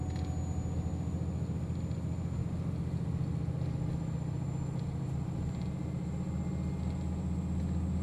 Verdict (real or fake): real